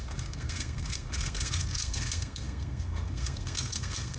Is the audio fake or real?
fake